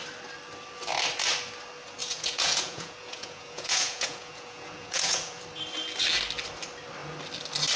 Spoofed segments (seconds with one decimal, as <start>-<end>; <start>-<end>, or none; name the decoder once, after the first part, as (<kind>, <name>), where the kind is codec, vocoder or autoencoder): 2.0-5.4 (vocoder, Vocos)